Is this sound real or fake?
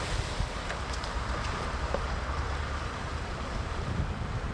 fake